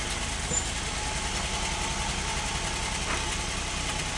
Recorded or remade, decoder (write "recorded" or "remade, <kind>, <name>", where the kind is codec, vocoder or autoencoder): recorded